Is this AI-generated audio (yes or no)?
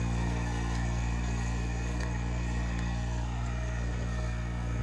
yes